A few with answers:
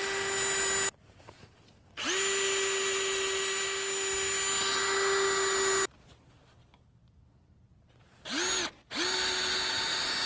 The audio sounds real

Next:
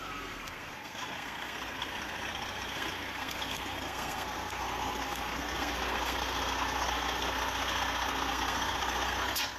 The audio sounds fake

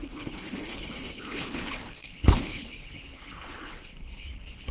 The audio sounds fake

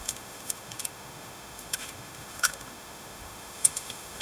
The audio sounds fake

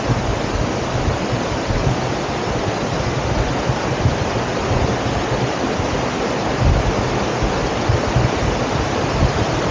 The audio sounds real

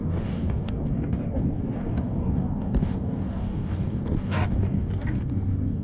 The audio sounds fake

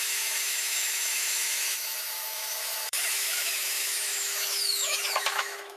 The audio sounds fake